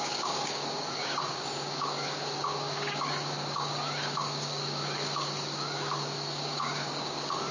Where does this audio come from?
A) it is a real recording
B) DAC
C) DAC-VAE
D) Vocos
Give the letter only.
B